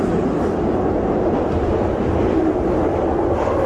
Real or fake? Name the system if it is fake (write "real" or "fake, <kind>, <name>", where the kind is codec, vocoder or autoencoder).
real